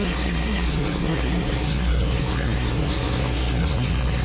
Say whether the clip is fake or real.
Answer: fake